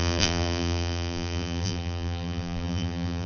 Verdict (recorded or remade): remade